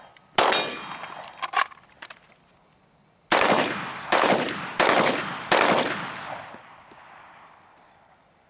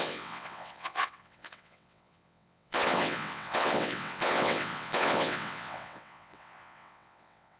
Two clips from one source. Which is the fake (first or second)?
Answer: second